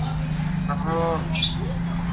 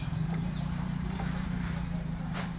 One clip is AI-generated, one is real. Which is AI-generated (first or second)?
second